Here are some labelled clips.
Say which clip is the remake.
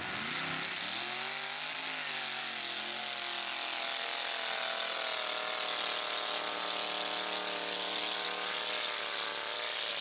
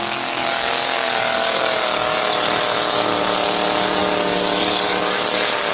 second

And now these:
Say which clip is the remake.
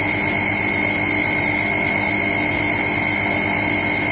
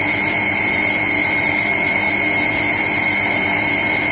second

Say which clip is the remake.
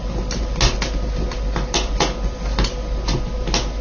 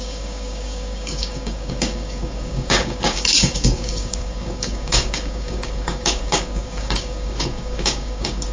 second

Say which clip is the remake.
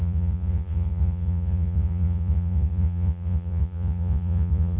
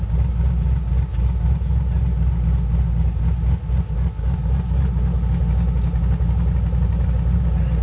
first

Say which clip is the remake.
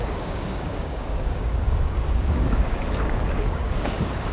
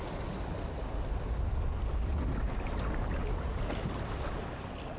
first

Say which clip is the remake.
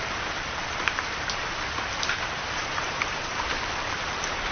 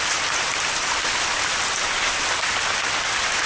first